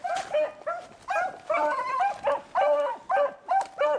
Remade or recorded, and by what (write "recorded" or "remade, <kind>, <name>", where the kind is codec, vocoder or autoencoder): recorded